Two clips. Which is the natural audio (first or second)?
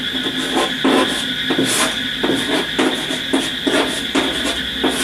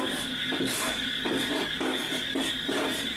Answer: first